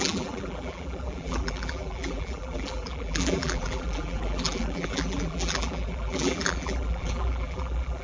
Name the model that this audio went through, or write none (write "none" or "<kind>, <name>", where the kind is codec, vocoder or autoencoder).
vocoder, BigVGAN v2